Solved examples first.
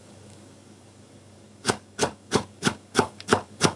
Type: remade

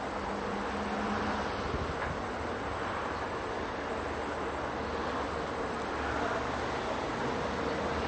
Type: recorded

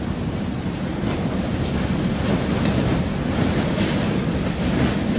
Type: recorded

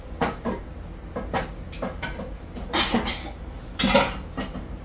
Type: recorded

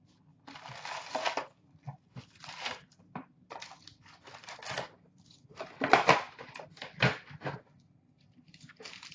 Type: recorded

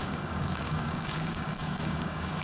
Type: remade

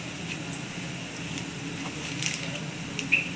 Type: recorded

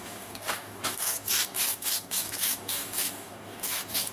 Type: remade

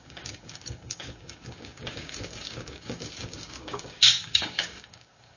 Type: remade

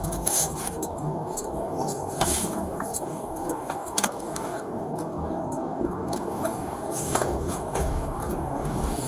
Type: remade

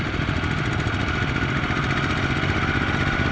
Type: recorded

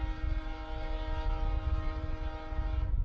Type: recorded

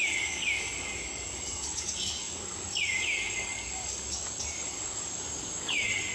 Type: remade